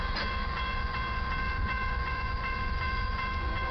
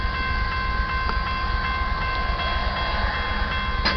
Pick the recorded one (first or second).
second